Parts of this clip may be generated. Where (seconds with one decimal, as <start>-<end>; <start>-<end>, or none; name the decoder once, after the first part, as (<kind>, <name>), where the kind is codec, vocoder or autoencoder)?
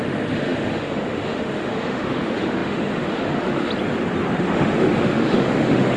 0.0-3.7 (autoencoder, DAC-VAE); 4.3-6.0